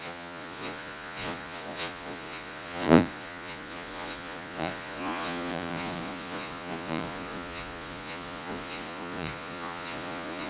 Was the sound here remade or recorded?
remade